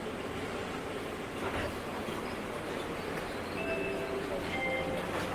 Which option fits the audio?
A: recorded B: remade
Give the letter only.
A